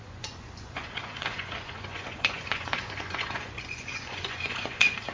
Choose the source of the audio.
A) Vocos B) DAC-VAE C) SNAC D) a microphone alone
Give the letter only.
A